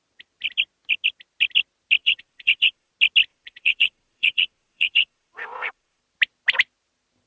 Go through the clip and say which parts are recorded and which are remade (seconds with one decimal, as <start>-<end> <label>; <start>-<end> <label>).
0.0-2.0 recorded; 2.0-2.9 remade; 2.9-3.3 recorded; 3.3-6.0 remade; 6.0-7.3 recorded